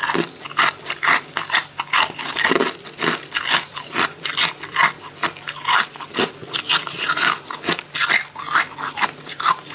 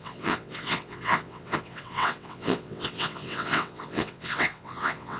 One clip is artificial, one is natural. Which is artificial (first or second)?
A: second